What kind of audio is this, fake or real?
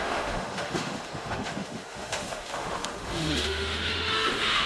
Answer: fake